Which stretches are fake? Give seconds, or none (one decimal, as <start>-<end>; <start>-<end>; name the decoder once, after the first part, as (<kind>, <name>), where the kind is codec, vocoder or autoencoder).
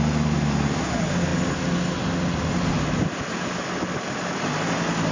none